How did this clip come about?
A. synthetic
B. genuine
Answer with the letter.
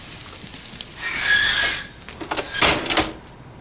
B